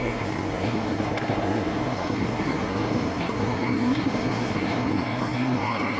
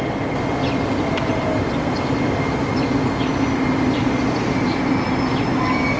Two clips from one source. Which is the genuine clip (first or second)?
second